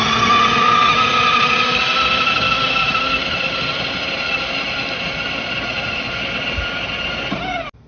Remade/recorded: recorded